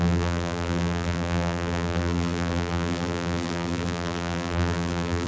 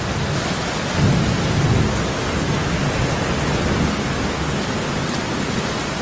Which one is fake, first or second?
first